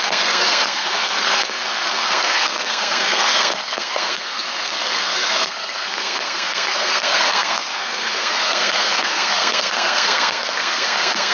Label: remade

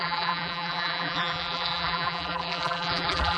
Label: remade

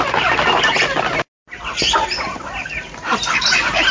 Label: recorded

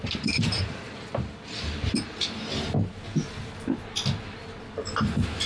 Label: remade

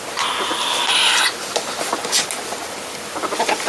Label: recorded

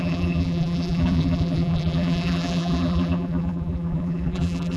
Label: remade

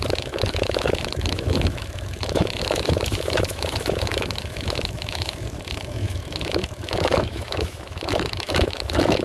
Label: remade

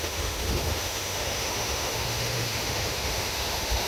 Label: remade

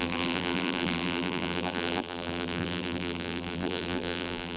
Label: remade